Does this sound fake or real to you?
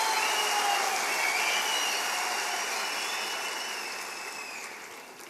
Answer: real